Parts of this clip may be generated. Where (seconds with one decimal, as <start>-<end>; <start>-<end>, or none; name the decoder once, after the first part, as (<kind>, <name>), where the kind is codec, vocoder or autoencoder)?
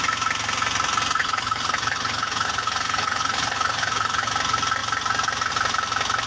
1.2-4.3 (codec, HILCodec)